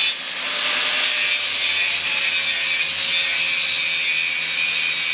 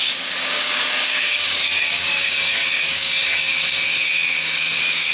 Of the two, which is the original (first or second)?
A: first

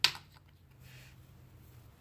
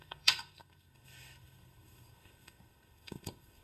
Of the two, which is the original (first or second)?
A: first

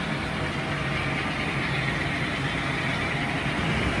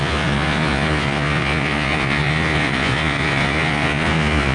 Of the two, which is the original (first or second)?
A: first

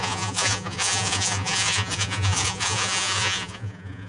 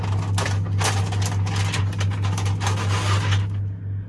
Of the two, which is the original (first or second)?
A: second